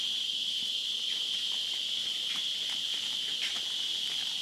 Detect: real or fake fake